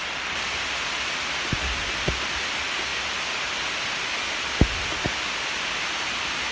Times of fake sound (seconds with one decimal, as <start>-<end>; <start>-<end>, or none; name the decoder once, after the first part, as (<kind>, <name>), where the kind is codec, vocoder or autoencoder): none